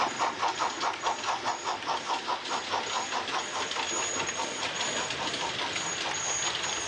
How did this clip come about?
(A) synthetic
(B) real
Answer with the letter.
B